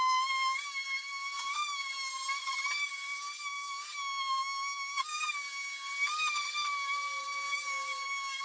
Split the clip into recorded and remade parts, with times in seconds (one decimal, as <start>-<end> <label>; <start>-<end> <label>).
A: 0.0-2.1 remade; 2.1-2.8 recorded; 2.8-5.9 remade; 5.9-7.2 recorded; 7.2-8.4 remade